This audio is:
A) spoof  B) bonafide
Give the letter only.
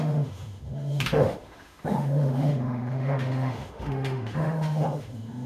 A